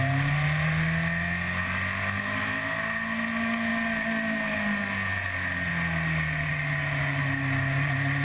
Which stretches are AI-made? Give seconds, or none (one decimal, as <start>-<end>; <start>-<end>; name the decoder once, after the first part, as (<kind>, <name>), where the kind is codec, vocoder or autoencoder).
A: none